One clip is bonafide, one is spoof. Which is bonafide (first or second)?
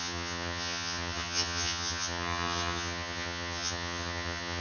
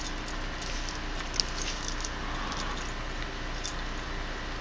second